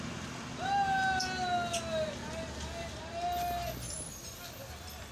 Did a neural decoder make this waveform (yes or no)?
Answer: no